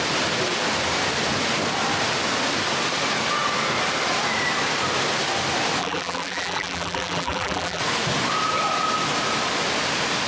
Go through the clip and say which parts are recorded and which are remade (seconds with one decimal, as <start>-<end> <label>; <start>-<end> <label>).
0.0-5.8 recorded; 5.8-7.8 remade; 7.8-10.3 recorded